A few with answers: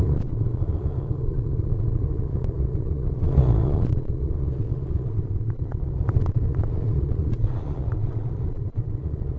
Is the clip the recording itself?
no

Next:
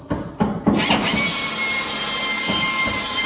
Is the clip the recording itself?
yes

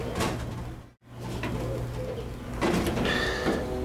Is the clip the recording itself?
yes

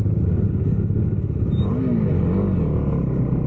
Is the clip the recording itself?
yes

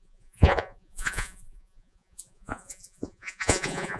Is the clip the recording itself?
no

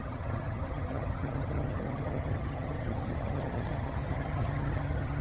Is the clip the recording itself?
no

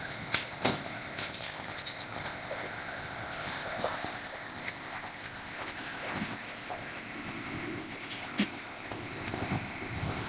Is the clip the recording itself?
no